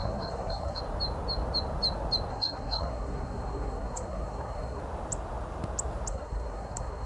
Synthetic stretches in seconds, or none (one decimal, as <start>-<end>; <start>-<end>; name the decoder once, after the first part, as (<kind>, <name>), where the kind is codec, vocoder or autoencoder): 0.0-0.8 (codec, SNAC); 2.3-4.8; 6.1-7.1